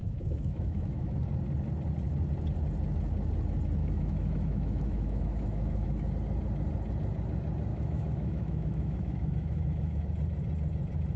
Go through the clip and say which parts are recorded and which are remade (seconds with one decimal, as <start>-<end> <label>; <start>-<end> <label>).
0.0-1.2 remade; 1.2-3.8 recorded; 3.8-6.1 remade; 6.1-7.7 recorded; 7.7-10.0 remade; 10.0-11.2 recorded